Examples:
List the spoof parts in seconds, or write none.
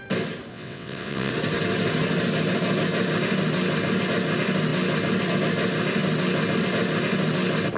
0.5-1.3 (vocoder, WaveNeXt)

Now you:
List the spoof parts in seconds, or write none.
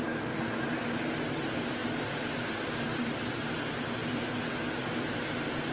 none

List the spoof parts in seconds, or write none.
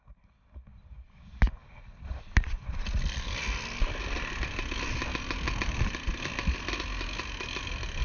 none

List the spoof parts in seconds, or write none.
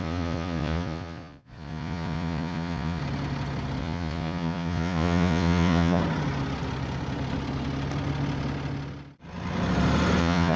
0.0-3.0 (vocoder, Vocos); 3.8-6.0; 10.2-10.6